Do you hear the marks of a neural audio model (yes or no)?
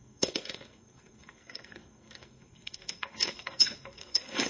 yes